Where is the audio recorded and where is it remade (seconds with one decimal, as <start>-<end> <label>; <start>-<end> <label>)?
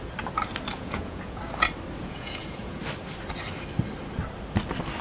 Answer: 0.0-0.7 recorded; 0.7-1.4 remade; 1.4-2.0 recorded; 2.0-2.8 remade; 2.8-5.0 recorded